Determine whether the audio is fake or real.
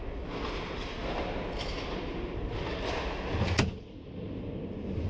real